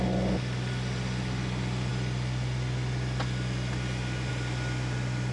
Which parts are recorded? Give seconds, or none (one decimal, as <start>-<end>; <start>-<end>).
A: 0.0-5.3